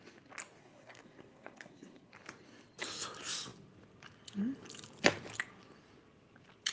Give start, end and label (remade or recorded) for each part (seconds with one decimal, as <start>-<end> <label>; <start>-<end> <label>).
0.0-0.6 recorded; 0.6-2.1 remade; 2.1-6.7 recorded